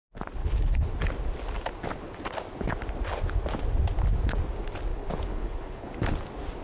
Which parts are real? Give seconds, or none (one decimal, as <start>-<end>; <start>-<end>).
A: 0.0-0.4; 0.9-4.9; 5.9-6.6